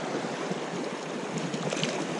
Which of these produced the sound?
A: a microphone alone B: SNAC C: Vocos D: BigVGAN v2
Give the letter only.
D